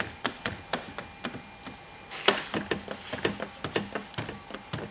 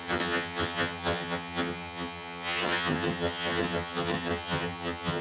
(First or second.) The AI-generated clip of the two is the second